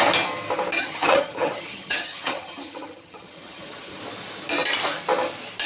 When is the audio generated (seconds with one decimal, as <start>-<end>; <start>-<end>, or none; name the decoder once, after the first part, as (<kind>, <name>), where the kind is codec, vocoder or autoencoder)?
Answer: 0.8-4.0 (vocoder, HiFi-GAN)